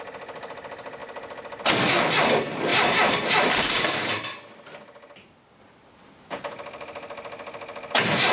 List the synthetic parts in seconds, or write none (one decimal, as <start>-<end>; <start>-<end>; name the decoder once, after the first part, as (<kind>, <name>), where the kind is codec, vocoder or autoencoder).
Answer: 2.7-4.3 (vocoder, BigVGAN v2)